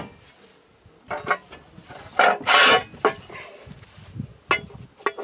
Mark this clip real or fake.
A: real